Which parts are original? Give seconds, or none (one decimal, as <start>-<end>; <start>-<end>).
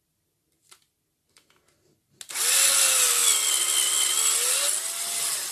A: 0.0-5.5